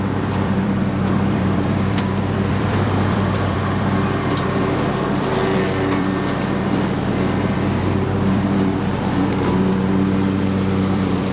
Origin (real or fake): fake